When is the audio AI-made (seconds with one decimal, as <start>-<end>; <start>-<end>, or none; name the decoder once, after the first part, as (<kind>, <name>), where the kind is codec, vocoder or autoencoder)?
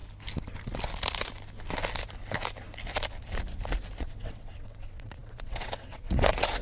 4.0-6.6 (vocoder, WaveNeXt)